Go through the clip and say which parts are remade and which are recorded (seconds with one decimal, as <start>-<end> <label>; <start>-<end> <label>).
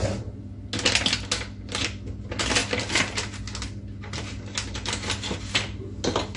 0.0-6.4 recorded